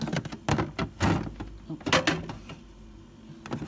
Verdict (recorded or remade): recorded